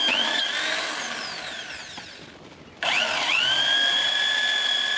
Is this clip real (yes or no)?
no